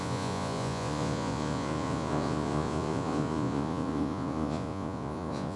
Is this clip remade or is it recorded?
remade